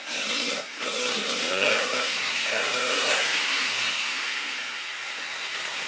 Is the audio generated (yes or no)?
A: yes